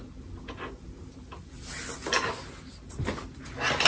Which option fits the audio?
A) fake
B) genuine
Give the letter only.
B